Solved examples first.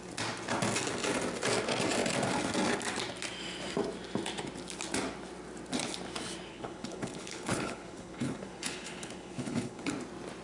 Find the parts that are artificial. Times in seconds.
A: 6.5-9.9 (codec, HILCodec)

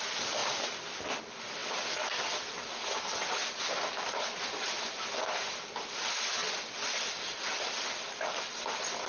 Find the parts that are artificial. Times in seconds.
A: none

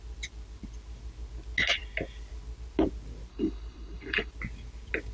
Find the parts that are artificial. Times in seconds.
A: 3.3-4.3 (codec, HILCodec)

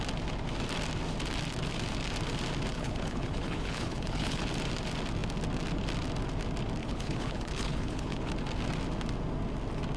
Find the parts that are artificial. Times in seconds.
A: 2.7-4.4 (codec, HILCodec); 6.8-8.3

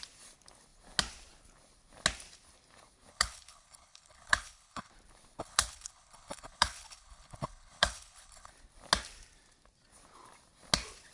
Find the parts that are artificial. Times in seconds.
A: 3.1-4.9 (codec, HILCodec); 5.4-8.5

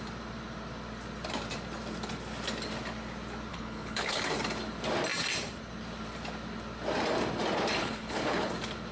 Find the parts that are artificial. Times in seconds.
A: 3.5-4.2 (codec, HILCodec); 7.8-8.5

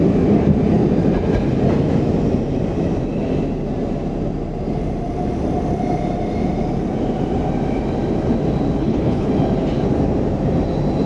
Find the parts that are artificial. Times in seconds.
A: 8.8-9.3 (codec, HILCodec)